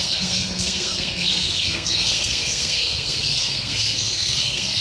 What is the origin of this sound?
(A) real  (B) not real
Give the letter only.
B